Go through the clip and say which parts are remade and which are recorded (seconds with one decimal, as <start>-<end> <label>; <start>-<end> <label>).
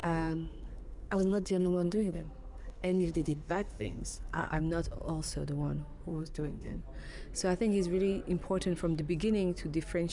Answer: 0.0-4.6 remade; 4.6-6.1 recorded; 6.1-6.8 remade; 6.8-10.1 recorded